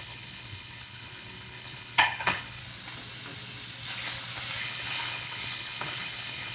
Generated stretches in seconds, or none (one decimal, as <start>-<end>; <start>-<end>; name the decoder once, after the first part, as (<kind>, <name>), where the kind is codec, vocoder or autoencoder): 0.0-2.6 (codec, HILCodec); 4.6-6.5